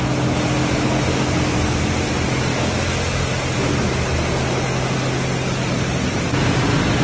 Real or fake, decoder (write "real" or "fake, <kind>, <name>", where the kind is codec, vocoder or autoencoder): real